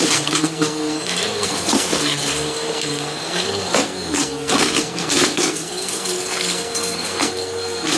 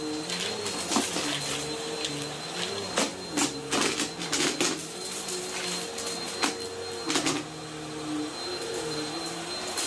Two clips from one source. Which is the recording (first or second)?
second